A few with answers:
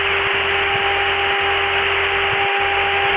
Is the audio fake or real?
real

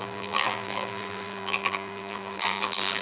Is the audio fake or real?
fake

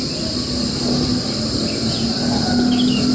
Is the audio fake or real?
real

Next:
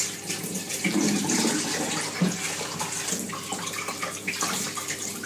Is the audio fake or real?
fake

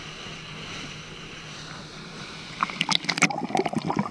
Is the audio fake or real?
real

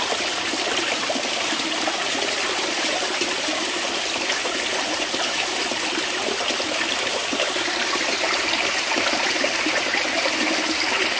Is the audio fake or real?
real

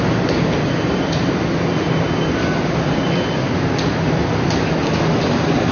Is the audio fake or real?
real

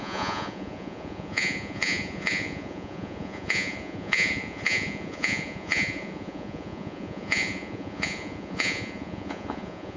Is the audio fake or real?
fake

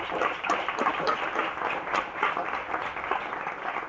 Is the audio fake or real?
real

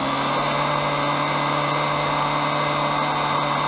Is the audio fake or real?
real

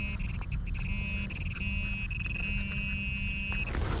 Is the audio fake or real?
real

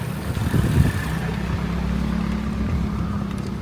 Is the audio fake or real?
real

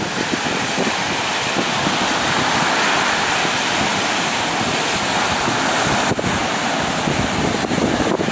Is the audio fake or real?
real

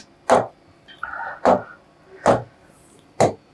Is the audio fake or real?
real